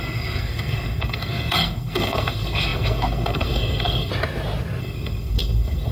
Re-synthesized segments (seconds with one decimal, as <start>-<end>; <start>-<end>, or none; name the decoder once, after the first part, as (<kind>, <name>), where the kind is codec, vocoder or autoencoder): 0.0-4.1 (codec, SNAC); 4.8-5.9